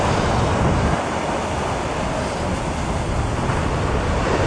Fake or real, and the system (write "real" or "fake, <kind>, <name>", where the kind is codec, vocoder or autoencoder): real